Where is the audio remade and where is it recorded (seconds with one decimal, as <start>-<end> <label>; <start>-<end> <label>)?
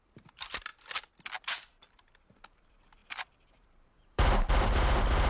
0.0-0.7 remade; 0.7-1.4 recorded; 1.4-5.3 remade